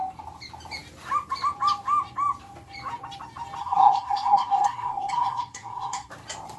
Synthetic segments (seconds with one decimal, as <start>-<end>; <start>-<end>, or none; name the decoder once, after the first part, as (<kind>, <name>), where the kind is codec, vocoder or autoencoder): 3.6-6.1 (codec, SNAC)